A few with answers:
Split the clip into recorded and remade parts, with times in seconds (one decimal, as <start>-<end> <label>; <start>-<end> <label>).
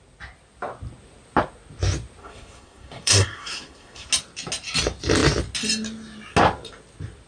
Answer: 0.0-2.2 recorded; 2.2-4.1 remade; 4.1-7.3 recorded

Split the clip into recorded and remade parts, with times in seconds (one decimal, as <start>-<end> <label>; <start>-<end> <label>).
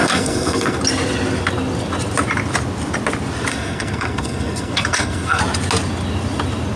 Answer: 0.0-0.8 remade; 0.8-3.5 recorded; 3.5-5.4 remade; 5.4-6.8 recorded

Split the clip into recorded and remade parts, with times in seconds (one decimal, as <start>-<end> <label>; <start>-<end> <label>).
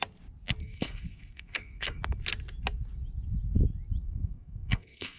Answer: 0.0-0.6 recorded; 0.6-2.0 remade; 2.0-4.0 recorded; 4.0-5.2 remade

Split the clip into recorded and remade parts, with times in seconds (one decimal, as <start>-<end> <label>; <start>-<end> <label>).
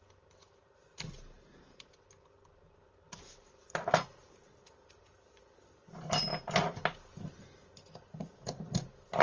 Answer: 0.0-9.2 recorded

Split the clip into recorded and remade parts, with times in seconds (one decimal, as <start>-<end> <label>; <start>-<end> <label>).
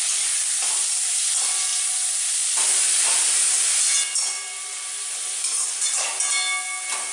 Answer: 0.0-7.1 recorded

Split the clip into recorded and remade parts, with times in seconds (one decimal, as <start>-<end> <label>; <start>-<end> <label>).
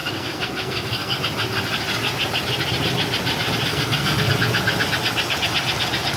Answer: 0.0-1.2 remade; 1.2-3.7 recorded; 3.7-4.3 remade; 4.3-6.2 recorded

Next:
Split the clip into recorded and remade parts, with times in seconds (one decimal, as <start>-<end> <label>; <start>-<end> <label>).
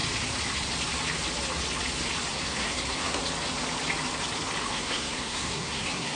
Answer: 0.0-2.3 recorded; 2.3-3.2 remade; 3.2-4.7 recorded; 4.7-6.2 remade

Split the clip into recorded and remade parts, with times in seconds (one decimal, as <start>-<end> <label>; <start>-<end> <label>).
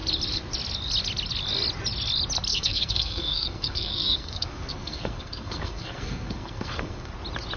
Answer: 0.0-2.5 recorded; 2.5-7.1 remade; 7.1-7.6 recorded